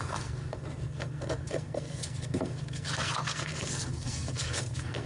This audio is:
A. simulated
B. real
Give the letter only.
A